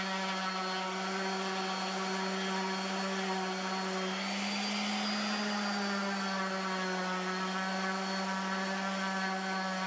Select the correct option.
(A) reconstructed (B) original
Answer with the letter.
B